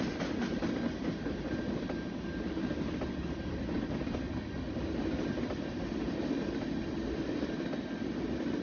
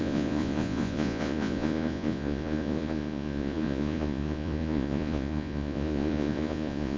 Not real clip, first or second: second